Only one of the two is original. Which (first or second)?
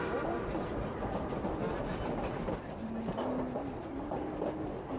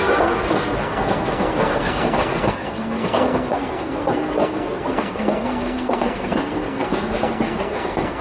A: first